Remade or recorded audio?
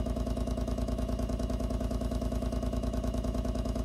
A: remade